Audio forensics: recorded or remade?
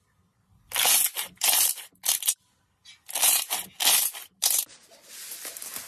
recorded